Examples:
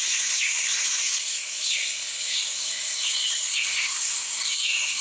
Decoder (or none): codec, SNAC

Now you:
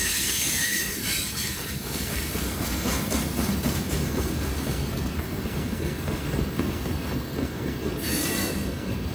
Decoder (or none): codec, SNAC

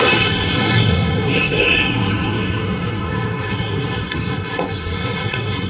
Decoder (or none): codec, SNAC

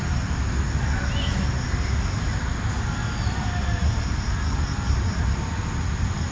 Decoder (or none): none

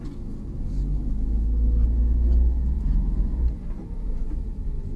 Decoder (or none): none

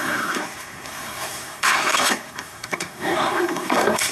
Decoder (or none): codec, SNAC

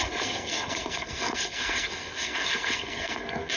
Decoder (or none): codec, SNAC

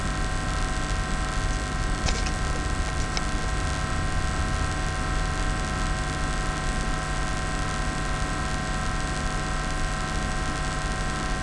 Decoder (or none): none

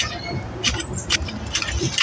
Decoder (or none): none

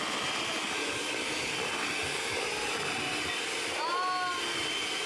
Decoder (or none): none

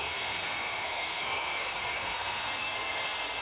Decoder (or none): codec, SNAC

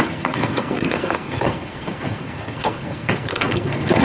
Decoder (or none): codec, SNAC